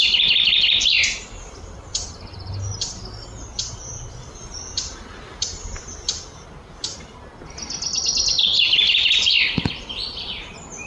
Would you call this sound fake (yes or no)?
no